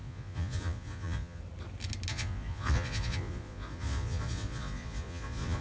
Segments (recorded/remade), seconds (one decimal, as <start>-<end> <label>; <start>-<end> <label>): 0.0-1.4 remade; 1.4-2.1 recorded; 2.1-5.6 remade